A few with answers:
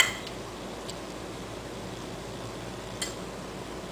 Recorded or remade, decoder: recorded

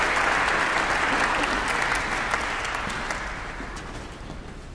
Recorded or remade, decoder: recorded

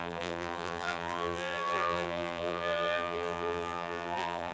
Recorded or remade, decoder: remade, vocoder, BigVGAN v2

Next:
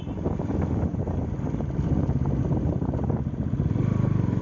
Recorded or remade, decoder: recorded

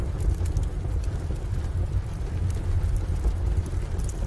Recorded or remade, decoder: recorded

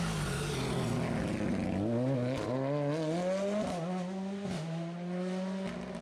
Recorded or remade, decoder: recorded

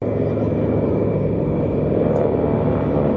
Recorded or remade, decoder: recorded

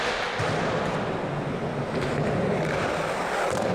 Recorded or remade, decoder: recorded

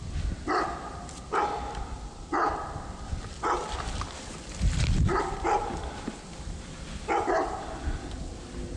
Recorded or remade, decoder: remade, vocoder, BigVGAN v2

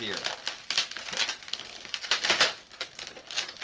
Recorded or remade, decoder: recorded